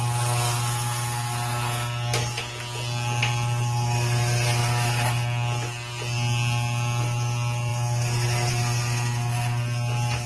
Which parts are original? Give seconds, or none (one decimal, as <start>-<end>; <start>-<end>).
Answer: 0.0-10.3